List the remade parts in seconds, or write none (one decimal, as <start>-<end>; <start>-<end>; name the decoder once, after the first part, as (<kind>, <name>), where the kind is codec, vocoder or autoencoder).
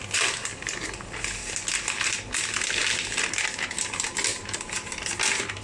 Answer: 0.5-1.5 (vocoder, BigVGAN v2)